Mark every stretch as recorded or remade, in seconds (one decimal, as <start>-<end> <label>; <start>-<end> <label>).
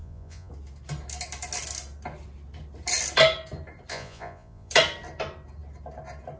0.0-0.5 remade; 0.5-3.9 recorded; 3.9-4.7 remade; 4.7-6.4 recorded